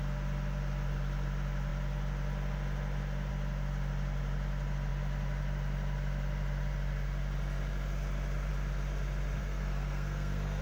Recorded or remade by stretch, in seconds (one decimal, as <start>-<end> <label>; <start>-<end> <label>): 0.0-9.4 recorded; 9.4-10.6 remade